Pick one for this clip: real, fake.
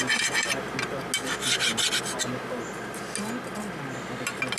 real